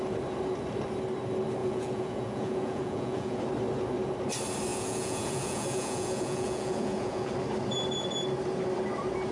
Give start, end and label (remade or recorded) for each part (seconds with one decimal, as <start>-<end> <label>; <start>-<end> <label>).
0.0-1.6 recorded; 1.6-3.4 remade; 3.4-4.7 recorded; 4.7-7.3 remade; 7.3-9.3 recorded